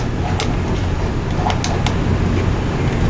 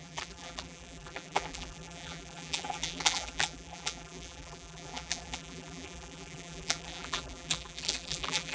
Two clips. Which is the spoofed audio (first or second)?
second